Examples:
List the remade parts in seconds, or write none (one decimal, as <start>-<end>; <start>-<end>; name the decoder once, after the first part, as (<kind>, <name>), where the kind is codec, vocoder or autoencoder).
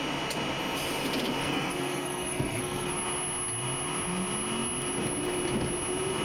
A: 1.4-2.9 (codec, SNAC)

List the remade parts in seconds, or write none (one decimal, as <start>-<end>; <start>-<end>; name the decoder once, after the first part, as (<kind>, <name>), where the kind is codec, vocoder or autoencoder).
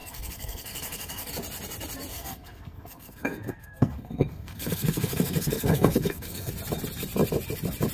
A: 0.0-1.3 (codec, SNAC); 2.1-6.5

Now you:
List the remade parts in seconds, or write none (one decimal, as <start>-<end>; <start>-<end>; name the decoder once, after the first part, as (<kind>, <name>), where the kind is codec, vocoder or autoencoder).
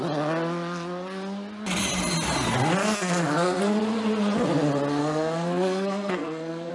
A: 2.8-3.8 (codec, SNAC); 5.0-6.7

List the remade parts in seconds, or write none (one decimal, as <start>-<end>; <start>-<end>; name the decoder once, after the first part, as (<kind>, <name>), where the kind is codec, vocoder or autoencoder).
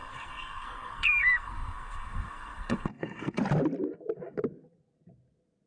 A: 0.0-3.4 (codec, SNAC)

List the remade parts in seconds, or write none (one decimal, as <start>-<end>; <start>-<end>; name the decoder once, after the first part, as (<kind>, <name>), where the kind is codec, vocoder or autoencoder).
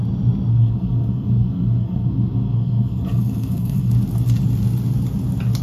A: 0.5-3.9 (codec, SNAC)